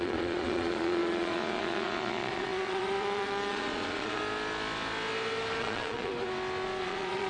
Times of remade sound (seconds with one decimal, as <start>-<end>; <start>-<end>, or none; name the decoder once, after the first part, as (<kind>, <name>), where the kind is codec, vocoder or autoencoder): 0.0-4.2 (vocoder, Vocos); 5.6-6.1; 6.8-7.3